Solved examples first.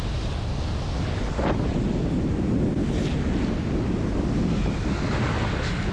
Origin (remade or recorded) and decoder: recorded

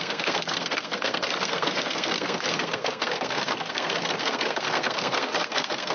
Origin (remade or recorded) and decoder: remade, codec, SNAC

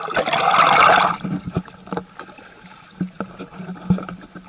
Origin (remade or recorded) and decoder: recorded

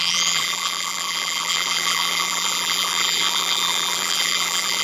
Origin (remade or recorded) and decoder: remade, vocoder, BigVGAN v2